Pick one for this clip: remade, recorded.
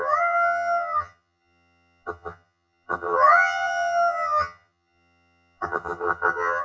remade